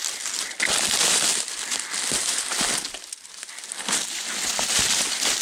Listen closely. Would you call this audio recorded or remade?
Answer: recorded